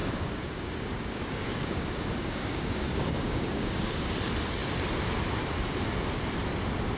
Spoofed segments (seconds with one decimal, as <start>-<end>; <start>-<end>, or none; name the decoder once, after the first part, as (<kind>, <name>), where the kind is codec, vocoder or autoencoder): 0.0-4.1 (codec, DAC)